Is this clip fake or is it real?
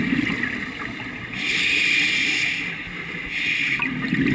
real